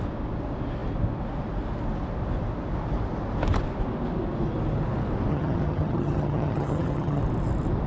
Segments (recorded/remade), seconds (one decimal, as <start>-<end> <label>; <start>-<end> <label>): 0.0-5.3 recorded; 5.3-7.2 remade; 7.2-7.9 recorded